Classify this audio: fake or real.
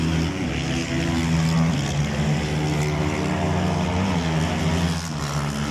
real